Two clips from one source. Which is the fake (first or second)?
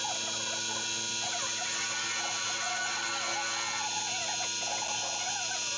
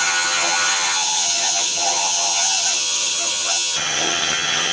second